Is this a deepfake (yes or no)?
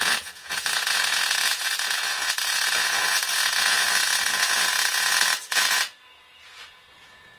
yes